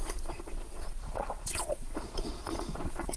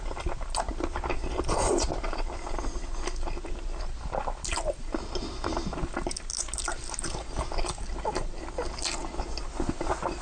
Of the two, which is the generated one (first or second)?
first